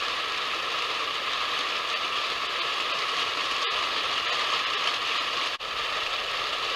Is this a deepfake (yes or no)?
no